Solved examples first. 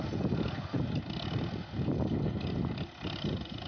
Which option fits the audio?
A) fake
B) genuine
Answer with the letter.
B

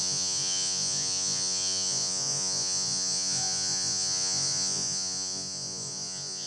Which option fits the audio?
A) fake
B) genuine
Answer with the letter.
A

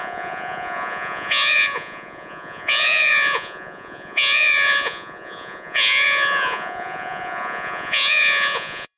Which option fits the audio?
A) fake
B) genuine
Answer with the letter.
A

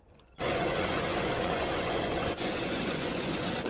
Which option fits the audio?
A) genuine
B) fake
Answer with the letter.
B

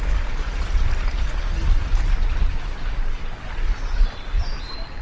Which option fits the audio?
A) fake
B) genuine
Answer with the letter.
B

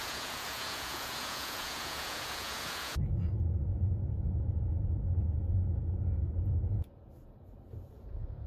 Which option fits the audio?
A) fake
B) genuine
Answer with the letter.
A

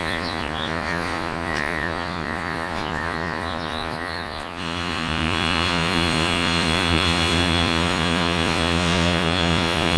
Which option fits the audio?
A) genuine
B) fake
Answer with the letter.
B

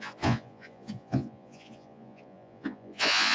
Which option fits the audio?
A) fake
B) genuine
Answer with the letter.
A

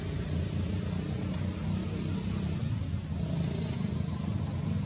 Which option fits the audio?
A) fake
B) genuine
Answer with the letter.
B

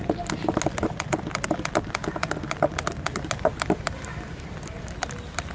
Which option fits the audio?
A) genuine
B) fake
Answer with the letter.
A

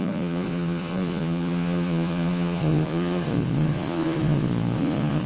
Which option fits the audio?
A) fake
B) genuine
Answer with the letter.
A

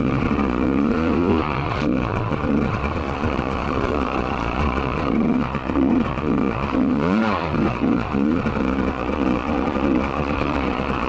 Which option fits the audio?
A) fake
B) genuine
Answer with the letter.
A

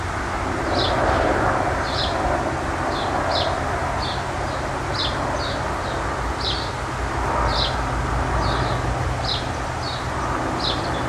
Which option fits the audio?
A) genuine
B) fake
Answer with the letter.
A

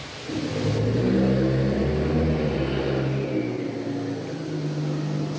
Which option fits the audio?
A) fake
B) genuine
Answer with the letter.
B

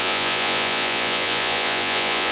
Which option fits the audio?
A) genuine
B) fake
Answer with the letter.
B